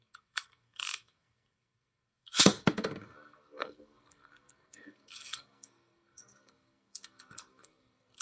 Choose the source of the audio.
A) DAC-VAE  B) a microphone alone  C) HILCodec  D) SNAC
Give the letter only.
D